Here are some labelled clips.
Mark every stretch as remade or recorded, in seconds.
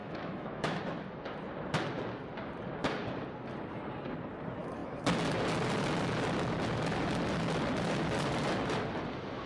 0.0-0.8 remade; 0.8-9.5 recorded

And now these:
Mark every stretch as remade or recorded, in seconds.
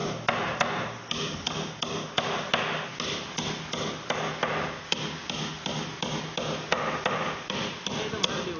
0.0-8.6 recorded